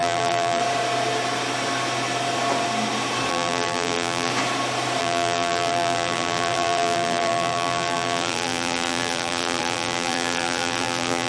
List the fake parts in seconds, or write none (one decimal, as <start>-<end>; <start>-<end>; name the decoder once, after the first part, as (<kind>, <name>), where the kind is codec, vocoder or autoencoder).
0.0-0.6 (vocoder, BigVGAN v2); 3.3-4.3; 5.0-11.3